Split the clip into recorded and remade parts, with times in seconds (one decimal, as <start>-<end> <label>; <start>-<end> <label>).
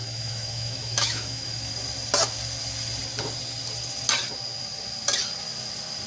0.0-1.7 remade; 1.7-6.1 recorded